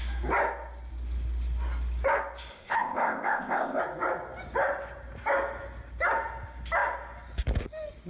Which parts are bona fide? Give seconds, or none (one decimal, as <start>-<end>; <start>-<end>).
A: 0.0-2.5; 3.8-8.1